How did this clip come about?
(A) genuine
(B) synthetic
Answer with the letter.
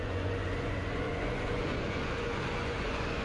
B